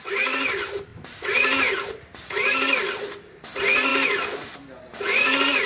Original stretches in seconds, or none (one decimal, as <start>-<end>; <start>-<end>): 0.0-5.7